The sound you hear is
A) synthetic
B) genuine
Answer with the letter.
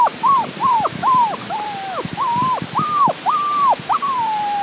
A